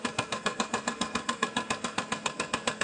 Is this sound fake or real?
fake